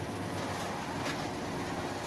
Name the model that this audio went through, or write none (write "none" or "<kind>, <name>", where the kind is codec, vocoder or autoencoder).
none